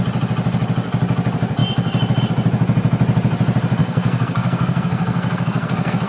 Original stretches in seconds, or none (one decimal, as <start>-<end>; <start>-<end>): 0.0-3.8

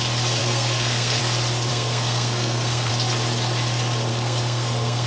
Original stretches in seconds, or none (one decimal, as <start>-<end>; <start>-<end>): 0.0-0.4; 1.2-1.7; 2.9-4.1

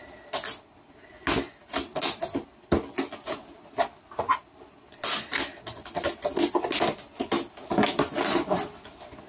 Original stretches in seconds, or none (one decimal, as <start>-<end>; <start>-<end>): 0.0-9.3

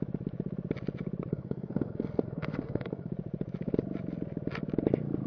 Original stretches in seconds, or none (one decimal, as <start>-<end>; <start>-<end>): 0.0-1.3; 3.1-5.3

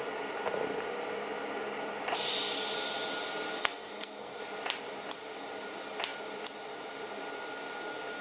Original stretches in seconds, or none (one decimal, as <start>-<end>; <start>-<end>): 0.0-3.6; 4.4-8.2

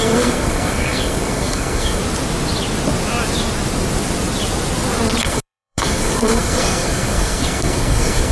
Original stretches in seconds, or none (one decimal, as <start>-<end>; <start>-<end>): 2.0-5.2

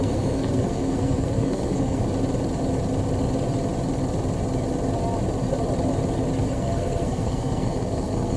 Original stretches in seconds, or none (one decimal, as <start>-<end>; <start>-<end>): 2.0-6.4

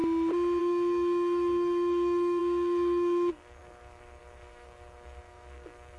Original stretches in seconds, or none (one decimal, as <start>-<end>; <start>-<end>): 0.0-0.6